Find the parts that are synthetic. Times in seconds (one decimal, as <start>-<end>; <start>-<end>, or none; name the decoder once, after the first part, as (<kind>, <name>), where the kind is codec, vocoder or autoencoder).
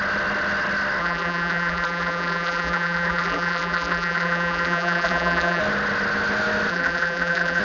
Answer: 1.0-5.6 (vocoder, BigVGAN v2); 6.7-7.6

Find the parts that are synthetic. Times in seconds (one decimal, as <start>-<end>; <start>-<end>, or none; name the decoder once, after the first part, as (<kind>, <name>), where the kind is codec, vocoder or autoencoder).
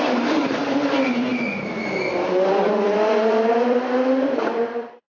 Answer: 0.0-1.3 (vocoder, BigVGAN v2); 2.1-5.1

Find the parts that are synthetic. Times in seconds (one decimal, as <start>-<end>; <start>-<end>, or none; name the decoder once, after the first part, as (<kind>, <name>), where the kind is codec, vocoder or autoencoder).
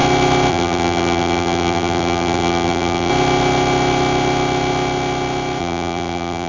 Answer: 0.5-3.1 (vocoder, BigVGAN v2); 5.6-6.5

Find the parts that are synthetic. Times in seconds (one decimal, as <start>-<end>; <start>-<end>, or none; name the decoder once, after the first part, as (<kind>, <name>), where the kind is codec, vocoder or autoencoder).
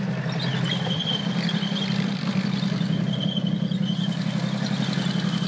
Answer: 0.5-3.2 (vocoder, BigVGAN v2)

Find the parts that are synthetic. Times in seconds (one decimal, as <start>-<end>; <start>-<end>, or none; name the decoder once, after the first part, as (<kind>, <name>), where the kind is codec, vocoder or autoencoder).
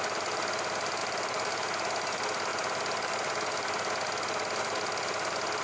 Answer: 1.0-1.5 (vocoder, BigVGAN v2)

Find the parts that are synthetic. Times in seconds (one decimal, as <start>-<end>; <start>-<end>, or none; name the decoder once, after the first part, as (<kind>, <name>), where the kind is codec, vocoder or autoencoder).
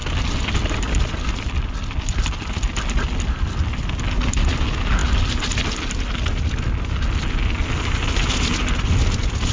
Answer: none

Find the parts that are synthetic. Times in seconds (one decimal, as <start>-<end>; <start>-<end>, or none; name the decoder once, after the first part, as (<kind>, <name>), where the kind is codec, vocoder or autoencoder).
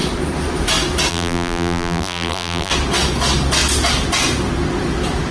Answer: 1.1-2.7 (vocoder, BigVGAN v2)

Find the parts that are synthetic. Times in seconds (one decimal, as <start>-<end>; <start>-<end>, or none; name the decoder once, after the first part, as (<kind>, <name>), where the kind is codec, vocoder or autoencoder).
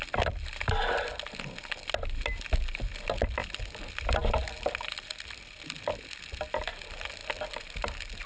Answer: none